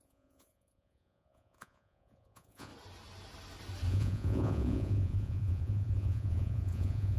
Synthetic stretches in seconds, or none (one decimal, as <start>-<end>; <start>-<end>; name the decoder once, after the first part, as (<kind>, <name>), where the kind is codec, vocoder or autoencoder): 0.0-2.7 (vocoder, Vocos); 3.9-7.2